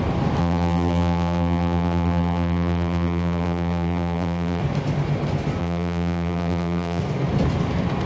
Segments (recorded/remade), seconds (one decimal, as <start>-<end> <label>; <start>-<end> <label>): 0.0-0.4 recorded; 0.4-4.6 remade; 4.6-5.6 recorded; 5.6-7.0 remade; 7.0-8.1 recorded